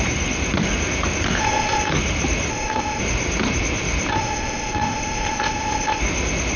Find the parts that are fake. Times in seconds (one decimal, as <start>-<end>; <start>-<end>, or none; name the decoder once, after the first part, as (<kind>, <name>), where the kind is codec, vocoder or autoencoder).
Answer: 1.4-1.9 (codec, ZipCodec); 2.5-3.0; 4.1-6.0